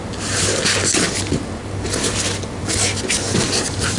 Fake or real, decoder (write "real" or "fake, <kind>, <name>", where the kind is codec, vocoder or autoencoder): real